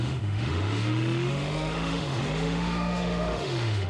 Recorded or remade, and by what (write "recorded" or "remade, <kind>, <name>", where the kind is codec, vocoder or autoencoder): remade, autoencoder, DAC-VAE